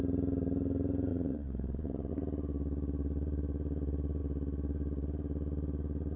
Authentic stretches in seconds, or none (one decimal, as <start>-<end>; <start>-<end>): 0.0-1.1; 2.1-6.2